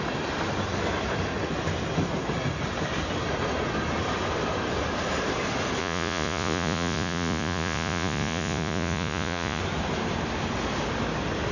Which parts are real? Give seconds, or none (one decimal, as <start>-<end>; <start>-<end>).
0.0-5.8; 9.6-11.5